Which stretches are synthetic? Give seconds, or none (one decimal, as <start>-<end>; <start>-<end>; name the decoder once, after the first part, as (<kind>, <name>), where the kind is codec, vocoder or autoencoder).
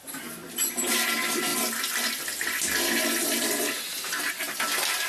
none